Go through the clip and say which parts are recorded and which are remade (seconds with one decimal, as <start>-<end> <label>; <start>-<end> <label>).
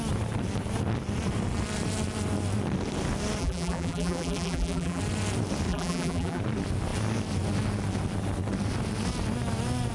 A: 0.0-3.4 recorded; 3.4-5.0 remade; 5.0-5.7 recorded; 5.7-6.4 remade; 6.4-9.9 recorded